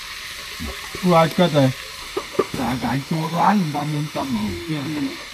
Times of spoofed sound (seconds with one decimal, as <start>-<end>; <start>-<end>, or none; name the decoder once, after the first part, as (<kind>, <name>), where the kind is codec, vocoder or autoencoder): 2.0-5.3 (autoencoder, DAC-VAE)

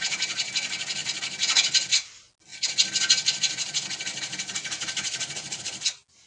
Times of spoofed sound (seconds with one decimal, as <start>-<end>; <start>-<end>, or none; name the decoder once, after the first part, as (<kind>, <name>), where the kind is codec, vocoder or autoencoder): none

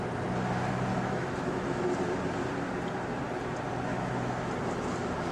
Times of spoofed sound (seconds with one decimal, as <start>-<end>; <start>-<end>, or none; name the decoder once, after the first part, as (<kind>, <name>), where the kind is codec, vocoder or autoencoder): 0.9-1.9 (autoencoder, DAC-VAE); 3.9-4.5

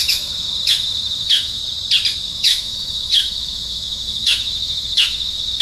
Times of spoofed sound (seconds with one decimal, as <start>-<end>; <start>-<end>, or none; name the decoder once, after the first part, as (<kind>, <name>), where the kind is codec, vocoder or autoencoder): 0.0-1.6 (autoencoder, DAC-VAE); 2.3-5.6

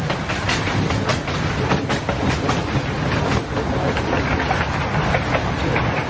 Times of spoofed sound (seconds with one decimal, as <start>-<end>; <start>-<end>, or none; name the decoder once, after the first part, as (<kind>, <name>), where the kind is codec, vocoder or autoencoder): none

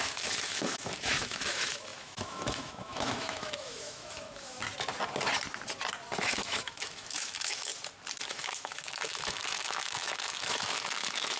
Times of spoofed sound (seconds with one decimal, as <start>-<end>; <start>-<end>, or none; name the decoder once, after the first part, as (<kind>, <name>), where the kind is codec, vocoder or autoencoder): 0.0-4.6 (autoencoder, DAC-VAE); 6.2-7.7; 8.3-11.4